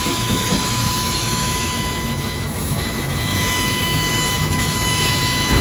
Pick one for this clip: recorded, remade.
remade